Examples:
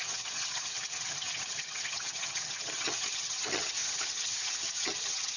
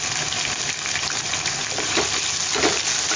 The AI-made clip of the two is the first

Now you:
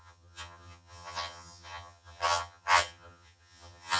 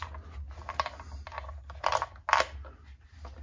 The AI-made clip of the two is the first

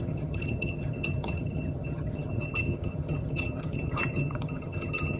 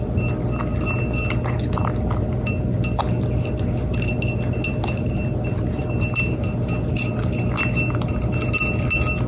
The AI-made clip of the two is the first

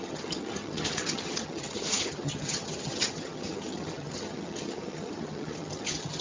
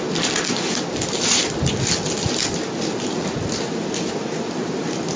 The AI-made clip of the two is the first